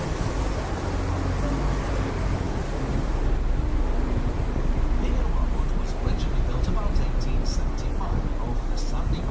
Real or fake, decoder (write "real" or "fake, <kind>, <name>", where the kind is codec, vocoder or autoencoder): real